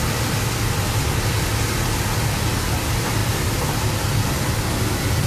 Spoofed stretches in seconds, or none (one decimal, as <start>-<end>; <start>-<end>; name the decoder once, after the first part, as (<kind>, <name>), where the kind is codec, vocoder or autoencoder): none